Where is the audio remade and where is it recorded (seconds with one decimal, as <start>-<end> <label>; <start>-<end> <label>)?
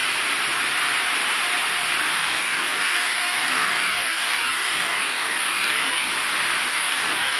0.0-2.1 recorded; 2.1-6.1 remade; 6.1-6.7 recorded; 6.7-7.4 remade